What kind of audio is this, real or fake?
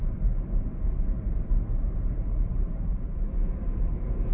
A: fake